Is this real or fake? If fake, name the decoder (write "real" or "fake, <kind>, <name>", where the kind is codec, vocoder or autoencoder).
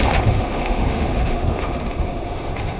fake, autoencoder, DAC-VAE